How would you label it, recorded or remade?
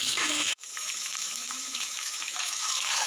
remade